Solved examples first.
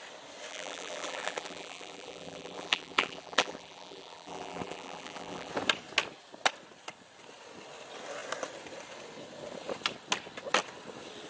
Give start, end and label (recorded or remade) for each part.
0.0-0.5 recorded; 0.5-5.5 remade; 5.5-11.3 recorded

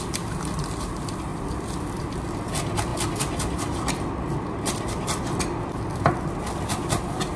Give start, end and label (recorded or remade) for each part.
0.0-1.3 recorded; 1.3-2.1 remade; 2.1-7.4 recorded

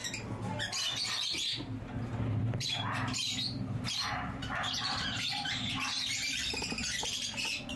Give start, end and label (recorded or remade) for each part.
0.0-2.4 recorded; 2.4-7.1 remade; 7.1-7.8 recorded